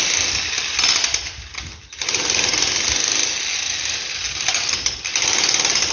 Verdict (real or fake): real